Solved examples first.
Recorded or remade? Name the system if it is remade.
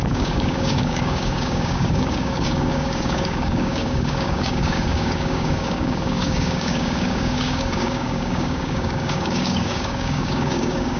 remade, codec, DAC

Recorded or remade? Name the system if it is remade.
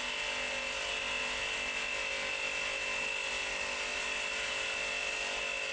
recorded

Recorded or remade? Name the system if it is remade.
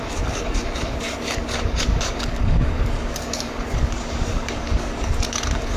remade, codec, DAC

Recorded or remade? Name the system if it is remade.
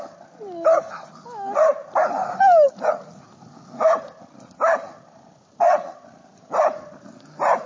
recorded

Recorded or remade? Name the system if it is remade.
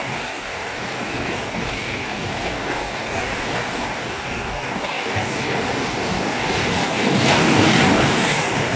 remade, codec, DAC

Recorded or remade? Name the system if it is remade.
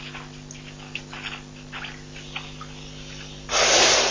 recorded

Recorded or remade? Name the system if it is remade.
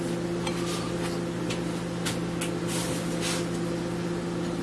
recorded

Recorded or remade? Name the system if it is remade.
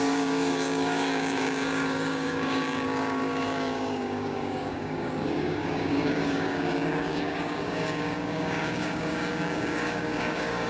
remade, codec, DAC